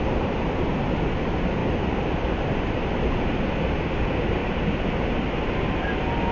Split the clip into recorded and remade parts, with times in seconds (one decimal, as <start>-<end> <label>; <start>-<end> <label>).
0.0-6.3 recorded